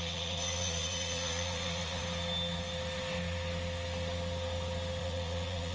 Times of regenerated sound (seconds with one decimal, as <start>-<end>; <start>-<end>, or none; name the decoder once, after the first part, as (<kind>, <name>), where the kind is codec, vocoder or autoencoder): 0.0-2.0 (vocoder, Vocos); 5.0-5.7